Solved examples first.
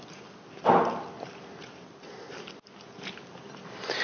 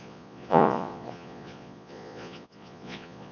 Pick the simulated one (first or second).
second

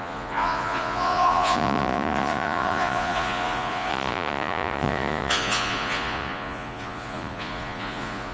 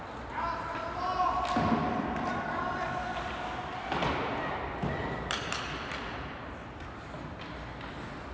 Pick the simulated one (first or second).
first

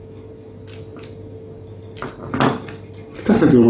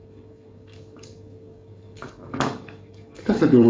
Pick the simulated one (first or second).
second